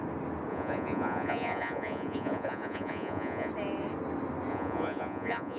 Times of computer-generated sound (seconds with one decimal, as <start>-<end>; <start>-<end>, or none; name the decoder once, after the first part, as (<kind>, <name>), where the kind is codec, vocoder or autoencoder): 0.5-3.5 (vocoder, Vocos); 4.5-5.6